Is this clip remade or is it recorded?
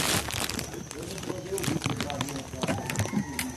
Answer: recorded